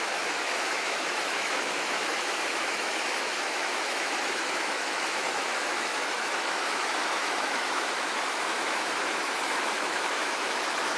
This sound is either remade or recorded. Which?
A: remade